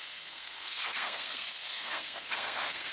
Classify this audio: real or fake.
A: fake